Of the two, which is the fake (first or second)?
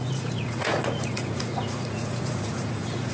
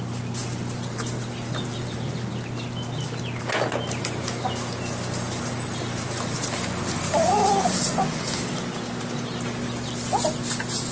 first